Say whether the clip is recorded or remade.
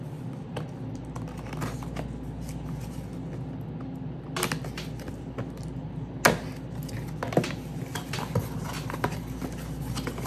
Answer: recorded